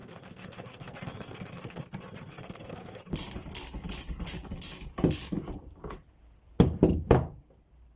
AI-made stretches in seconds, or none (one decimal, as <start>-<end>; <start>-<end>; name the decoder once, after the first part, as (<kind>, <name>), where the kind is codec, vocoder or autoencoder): 0.0-1.8 (codec, SNAC); 2.3-3.0